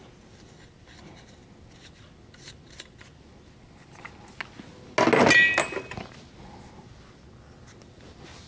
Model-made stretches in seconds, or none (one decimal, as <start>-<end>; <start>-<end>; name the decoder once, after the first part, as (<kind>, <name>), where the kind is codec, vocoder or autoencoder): none